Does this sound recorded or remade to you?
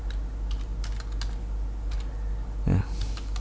recorded